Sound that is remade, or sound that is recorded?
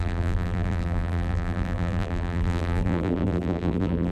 remade